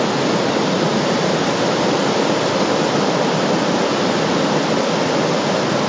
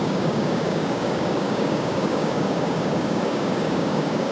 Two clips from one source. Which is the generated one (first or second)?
second